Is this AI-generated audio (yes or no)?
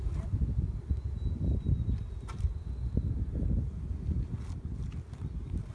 no